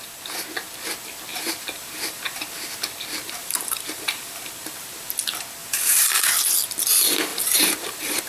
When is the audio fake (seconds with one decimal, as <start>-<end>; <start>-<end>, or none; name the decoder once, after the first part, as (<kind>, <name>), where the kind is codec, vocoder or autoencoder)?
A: 1.3-2.7 (vocoder, BigVGAN v2); 3.4-5.1; 5.6-6.3; 7.3-8.3